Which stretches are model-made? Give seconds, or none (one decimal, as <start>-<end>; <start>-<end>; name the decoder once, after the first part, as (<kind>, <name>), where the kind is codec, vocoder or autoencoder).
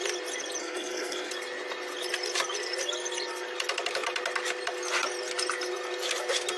0.6-1.3 (codec, SNAC)